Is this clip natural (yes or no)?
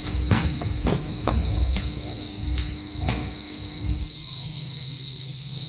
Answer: no